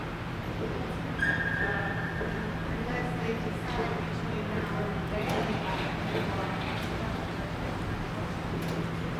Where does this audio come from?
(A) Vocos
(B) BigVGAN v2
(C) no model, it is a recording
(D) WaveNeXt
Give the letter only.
C